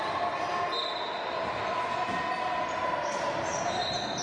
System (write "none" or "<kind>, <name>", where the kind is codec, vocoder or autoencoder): none